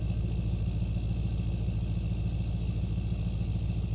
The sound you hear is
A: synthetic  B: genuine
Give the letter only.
B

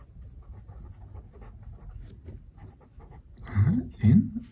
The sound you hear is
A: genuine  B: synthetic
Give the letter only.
A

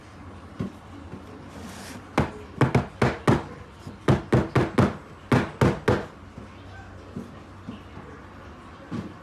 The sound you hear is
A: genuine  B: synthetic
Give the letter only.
A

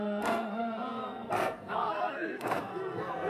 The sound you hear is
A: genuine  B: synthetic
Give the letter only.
B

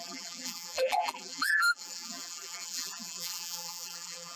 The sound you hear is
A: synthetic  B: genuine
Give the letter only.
A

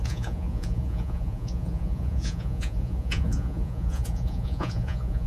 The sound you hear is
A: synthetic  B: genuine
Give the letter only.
A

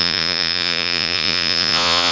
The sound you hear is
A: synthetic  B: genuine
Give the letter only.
A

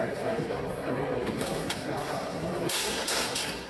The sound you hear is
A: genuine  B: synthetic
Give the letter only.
B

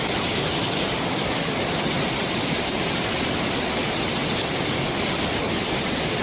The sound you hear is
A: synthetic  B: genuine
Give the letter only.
B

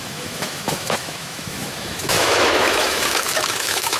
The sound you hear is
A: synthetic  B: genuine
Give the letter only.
A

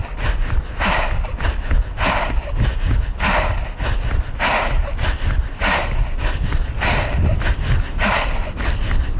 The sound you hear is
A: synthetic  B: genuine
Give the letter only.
B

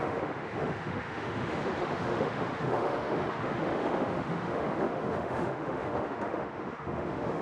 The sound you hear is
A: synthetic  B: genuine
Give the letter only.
A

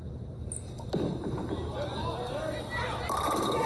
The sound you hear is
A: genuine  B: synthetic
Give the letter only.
A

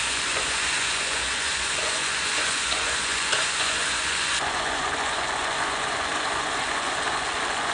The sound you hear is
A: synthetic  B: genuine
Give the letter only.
A